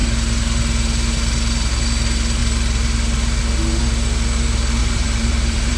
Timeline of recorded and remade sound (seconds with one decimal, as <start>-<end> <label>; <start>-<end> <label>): 0.0-4.8 recorded; 4.8-5.8 remade